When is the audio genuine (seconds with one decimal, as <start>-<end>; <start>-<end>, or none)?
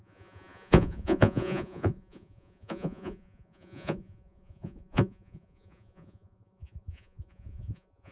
none